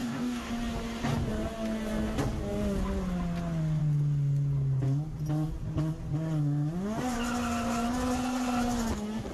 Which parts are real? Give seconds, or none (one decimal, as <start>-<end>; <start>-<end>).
0.5-9.3